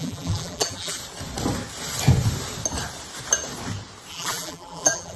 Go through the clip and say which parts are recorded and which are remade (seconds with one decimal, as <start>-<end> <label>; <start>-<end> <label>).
0.0-1.0 remade; 1.0-4.1 recorded; 4.1-5.2 remade